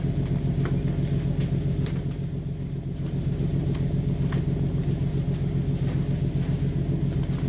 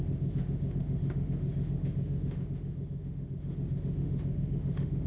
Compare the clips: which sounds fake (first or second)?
second